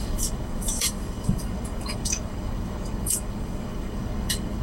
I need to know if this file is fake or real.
fake